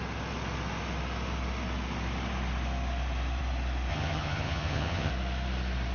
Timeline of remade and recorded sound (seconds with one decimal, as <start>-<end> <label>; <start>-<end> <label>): 0.0-3.9 recorded; 3.9-5.1 remade; 5.1-5.9 recorded